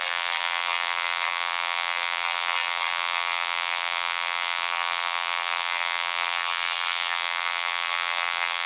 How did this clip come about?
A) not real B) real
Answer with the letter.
A